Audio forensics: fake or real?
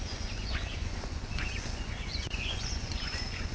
fake